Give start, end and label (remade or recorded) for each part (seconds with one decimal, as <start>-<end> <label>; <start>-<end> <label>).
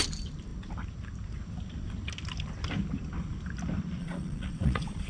0.0-4.0 recorded; 4.0-5.1 remade